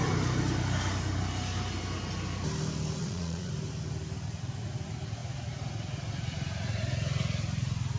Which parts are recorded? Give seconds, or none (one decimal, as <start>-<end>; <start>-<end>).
0.0-3.0; 3.5-8.0